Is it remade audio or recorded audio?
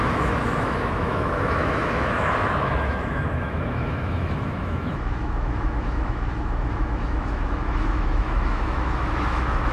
remade